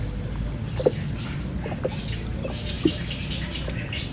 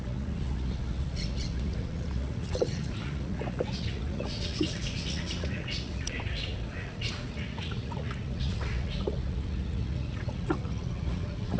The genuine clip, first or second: first